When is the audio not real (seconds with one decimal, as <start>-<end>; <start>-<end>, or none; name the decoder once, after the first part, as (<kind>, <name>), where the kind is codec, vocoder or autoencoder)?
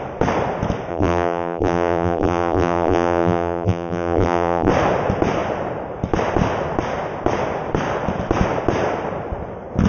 0.9-4.7 (vocoder, BigVGAN v2)